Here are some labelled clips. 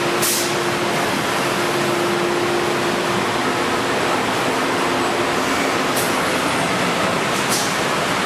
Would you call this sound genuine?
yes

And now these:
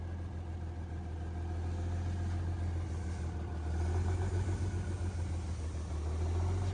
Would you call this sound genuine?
yes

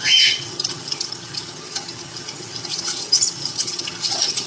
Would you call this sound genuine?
no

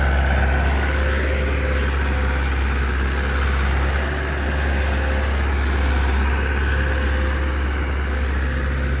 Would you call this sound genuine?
yes